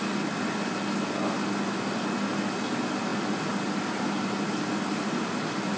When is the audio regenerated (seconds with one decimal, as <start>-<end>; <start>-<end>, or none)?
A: none